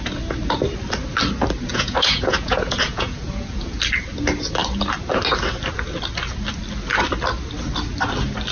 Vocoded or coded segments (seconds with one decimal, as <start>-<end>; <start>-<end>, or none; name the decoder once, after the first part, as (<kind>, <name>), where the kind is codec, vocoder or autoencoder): 1.7-3.8 (vocoder, Vocos)